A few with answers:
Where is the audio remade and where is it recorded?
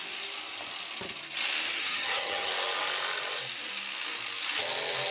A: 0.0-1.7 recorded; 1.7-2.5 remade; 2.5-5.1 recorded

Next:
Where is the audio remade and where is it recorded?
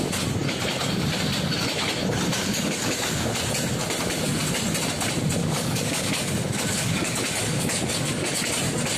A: 0.0-2.4 recorded; 2.4-3.5 remade; 3.5-5.4 recorded; 5.4-8.5 remade; 8.5-9.0 recorded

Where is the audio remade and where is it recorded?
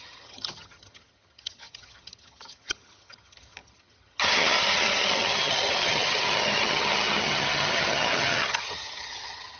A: 0.0-9.6 remade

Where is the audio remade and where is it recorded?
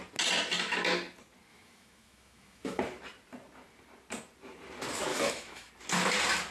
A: 0.0-1.5 recorded; 1.5-2.8 remade; 2.8-5.1 recorded; 5.1-5.7 remade; 5.7-6.5 recorded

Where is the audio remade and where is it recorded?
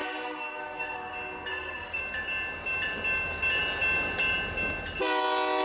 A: 0.0-1.1 remade; 1.1-1.5 recorded; 1.5-2.0 remade; 2.0-5.6 recorded